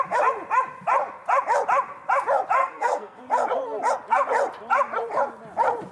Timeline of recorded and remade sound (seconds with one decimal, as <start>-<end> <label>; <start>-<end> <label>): 0.0-2.6 recorded; 2.6-3.2 remade; 3.2-5.9 recorded